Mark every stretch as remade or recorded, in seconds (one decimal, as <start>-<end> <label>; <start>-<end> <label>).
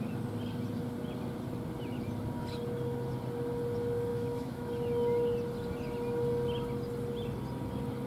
0.0-4.1 recorded; 4.1-4.7 remade; 4.7-8.1 recorded